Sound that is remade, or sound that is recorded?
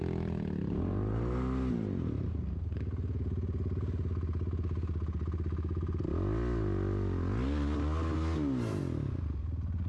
recorded